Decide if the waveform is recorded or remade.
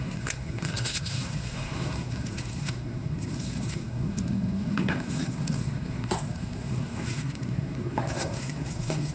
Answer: remade